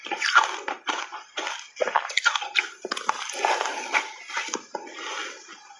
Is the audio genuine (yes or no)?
yes